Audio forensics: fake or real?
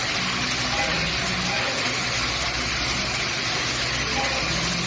real